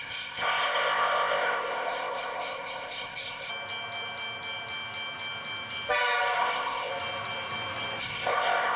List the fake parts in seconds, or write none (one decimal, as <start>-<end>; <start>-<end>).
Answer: 0.0-3.5; 6.4-6.9; 8.0-8.8